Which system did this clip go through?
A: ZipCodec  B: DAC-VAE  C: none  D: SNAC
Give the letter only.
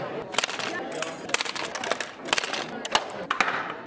C